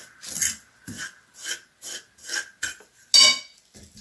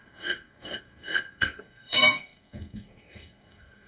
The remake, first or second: second